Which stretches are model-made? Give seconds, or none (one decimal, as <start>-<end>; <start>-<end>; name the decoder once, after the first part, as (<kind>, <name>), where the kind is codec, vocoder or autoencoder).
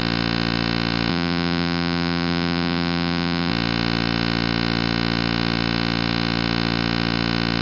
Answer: 1.1-3.5 (vocoder, BigVGAN v2)